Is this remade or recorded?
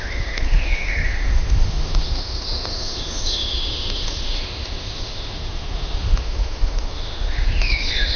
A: remade